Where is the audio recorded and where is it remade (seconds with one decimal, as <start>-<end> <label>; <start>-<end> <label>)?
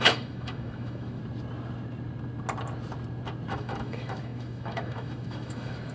0.0-1.2 remade; 1.2-3.5 recorded; 3.5-5.9 remade